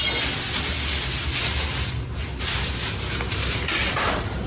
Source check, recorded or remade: recorded